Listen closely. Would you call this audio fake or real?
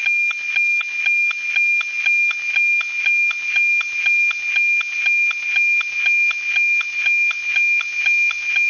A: real